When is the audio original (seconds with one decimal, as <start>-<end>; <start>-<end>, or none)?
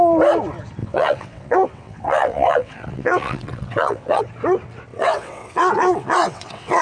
0.0-0.8; 4.2-4.9